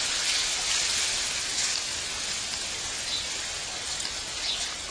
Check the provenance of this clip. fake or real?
fake